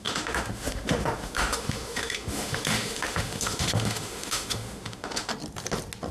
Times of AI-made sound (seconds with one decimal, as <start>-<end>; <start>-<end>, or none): 0.0-5.3